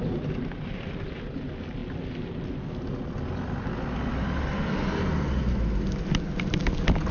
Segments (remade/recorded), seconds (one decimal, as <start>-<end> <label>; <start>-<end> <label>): 0.0-7.1 recorded